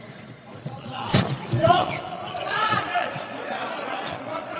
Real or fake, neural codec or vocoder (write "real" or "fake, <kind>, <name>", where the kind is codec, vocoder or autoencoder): fake, vocoder, Vocos